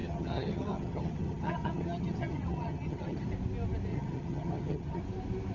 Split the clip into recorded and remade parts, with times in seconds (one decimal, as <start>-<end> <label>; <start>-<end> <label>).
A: 0.0-3.3 remade; 3.3-3.9 recorded; 3.9-5.0 remade; 5.0-5.5 recorded